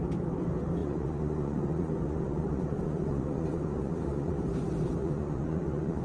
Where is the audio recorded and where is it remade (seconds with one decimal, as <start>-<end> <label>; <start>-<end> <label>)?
0.0-0.8 recorded; 0.8-4.4 remade; 4.4-5.0 recorded; 5.0-6.0 remade

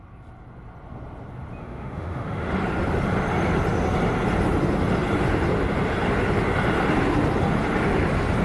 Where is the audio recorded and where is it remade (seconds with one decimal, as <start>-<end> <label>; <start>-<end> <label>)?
0.0-1.6 recorded; 1.6-2.5 remade; 2.5-8.4 recorded

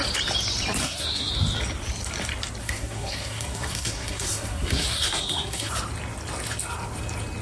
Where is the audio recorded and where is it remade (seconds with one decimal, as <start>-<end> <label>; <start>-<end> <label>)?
0.0-0.8 recorded; 0.8-1.3 remade; 1.3-2.6 recorded; 2.6-5.7 remade; 5.7-7.4 recorded

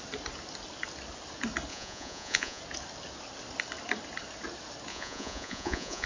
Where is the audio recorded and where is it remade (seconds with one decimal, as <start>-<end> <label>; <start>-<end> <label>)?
0.0-1.7 recorded; 1.7-2.6 remade; 2.6-4.9 recorded; 4.9-6.1 remade

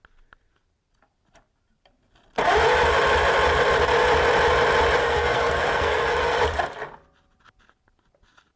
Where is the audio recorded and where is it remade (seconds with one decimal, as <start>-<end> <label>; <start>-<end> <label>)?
0.0-5.0 recorded; 5.0-6.4 remade; 6.4-8.6 recorded

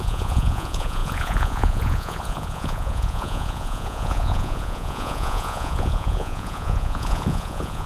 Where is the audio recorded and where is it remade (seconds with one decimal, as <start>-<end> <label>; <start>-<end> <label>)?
0.0-7.9 remade